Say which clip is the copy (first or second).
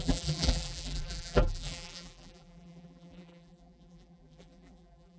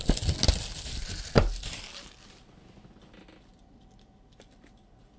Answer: first